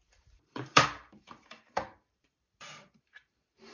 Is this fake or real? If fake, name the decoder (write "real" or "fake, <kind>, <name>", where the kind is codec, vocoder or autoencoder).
fake, vocoder, BigVGAN v2